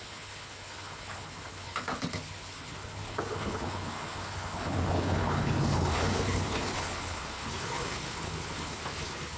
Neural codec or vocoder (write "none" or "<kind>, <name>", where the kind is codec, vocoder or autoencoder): codec, HILCodec